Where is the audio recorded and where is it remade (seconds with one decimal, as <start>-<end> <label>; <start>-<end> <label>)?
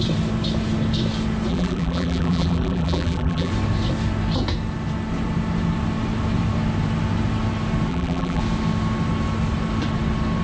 0.0-1.5 recorded; 1.5-3.5 remade; 3.5-7.9 recorded; 7.9-8.4 remade; 8.4-10.4 recorded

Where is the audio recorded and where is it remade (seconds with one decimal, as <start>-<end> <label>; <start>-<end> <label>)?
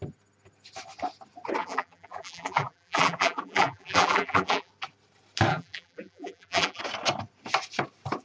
0.0-1.6 recorded; 1.6-4.7 remade; 4.7-5.5 recorded; 5.5-6.8 remade; 6.8-8.2 recorded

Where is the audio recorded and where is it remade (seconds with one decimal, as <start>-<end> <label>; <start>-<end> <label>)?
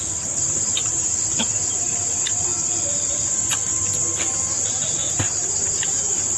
0.0-2.5 remade; 2.5-3.1 recorded; 3.1-3.7 remade; 3.7-4.7 recorded; 4.7-6.4 remade